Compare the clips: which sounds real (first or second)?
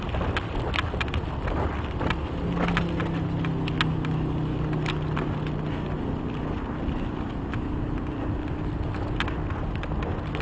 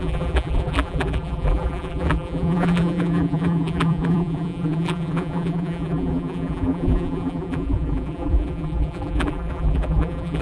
first